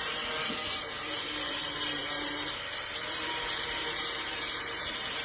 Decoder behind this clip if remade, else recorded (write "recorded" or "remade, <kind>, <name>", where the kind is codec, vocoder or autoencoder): remade, vocoder, BigVGAN v2